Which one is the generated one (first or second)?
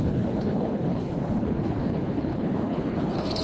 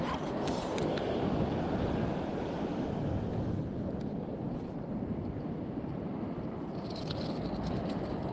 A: first